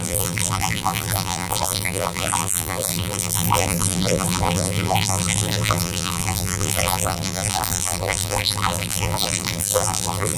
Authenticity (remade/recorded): remade